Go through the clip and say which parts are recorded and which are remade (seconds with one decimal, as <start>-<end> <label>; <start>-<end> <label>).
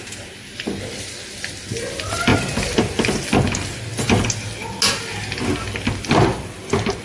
0.0-7.0 recorded